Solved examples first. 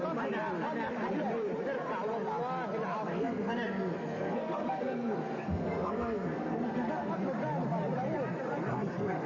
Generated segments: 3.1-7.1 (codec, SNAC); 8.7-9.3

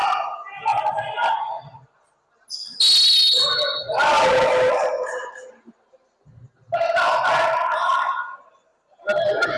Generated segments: none

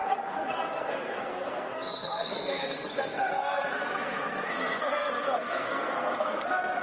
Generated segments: 0.0-6.8 (codec, SNAC)